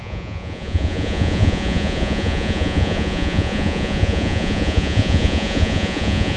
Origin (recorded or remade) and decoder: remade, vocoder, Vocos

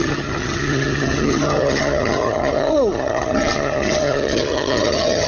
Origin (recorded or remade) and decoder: remade, vocoder, HiFi-GAN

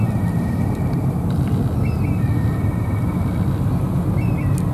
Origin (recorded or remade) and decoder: recorded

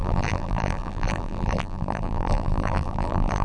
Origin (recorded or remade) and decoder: remade, vocoder, BigVGAN v2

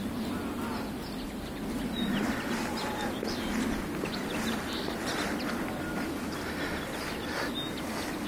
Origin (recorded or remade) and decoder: recorded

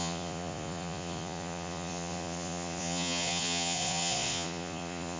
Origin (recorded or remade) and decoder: remade, vocoder, Vocos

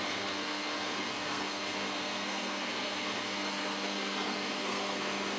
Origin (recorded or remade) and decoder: remade, codec, SNAC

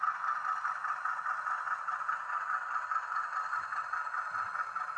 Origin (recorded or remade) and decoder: recorded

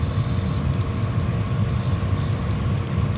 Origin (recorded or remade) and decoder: recorded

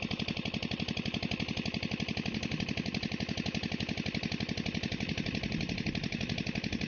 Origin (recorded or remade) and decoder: recorded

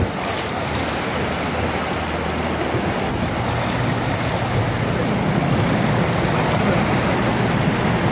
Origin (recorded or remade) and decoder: recorded